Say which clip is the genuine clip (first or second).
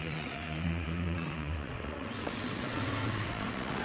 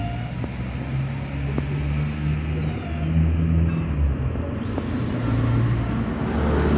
second